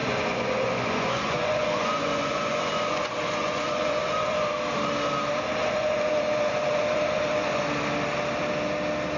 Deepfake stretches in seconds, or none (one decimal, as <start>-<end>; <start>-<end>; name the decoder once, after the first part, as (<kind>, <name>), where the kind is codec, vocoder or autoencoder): 0.0-4.5 (vocoder, Vocos); 5.6-7.6